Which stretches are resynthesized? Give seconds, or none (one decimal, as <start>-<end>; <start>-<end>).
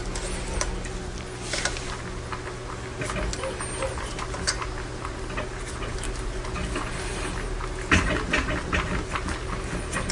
none